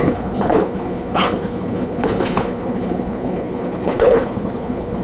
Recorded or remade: remade